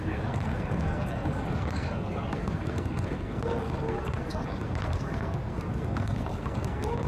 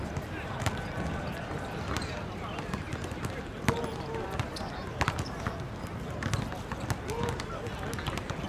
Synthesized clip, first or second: first